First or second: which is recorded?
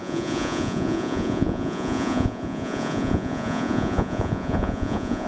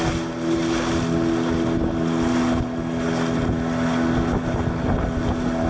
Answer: second